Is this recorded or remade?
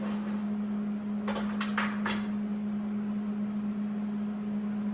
recorded